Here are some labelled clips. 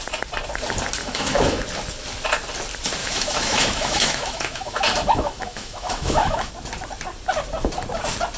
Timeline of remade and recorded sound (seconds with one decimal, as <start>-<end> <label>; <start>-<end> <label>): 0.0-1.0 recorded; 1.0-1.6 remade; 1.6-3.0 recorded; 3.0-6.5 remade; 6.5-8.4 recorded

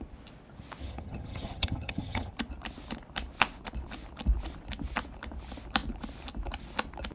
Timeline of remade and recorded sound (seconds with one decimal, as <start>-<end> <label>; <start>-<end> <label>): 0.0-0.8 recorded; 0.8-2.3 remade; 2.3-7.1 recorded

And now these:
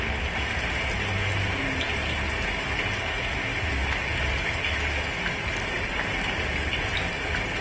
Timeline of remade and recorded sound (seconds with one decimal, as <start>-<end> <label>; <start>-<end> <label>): 0.0-7.6 recorded

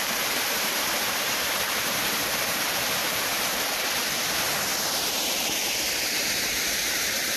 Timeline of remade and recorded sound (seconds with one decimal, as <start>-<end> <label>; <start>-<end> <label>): 0.0-7.4 remade

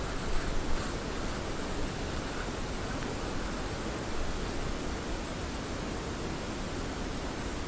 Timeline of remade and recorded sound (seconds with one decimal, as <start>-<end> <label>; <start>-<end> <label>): 0.0-7.7 recorded

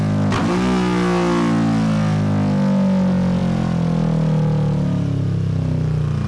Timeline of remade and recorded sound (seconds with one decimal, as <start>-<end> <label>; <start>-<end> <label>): 0.0-6.3 recorded